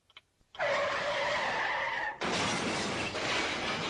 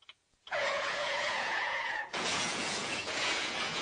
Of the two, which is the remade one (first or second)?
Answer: second